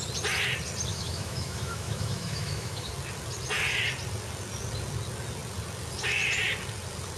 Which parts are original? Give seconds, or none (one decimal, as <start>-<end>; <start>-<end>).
0.0-0.9; 2.9-7.2